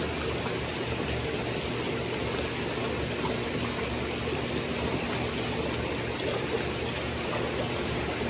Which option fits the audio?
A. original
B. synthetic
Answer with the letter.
A